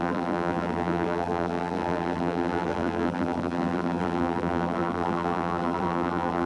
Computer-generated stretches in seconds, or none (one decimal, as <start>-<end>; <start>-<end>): 0.0-6.5